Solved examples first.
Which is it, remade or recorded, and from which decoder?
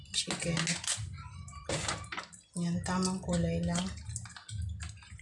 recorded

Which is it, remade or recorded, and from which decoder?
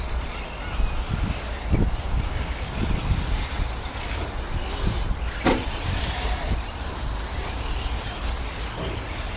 recorded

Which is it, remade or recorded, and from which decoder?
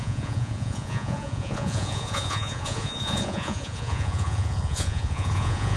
remade, vocoder, Vocos